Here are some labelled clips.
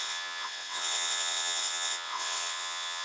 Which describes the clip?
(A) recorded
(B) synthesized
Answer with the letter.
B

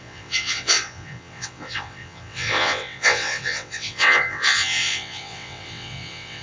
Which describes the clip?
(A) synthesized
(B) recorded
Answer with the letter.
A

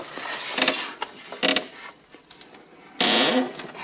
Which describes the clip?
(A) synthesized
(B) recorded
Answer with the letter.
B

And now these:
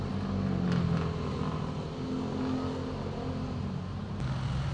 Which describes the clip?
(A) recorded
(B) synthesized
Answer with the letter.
A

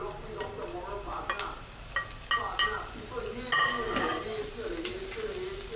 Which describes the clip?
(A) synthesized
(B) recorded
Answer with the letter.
B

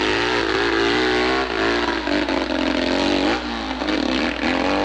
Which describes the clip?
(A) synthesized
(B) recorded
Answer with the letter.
B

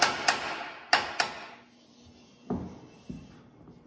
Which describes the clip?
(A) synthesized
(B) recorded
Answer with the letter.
B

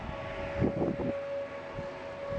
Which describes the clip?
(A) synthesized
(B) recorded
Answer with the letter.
B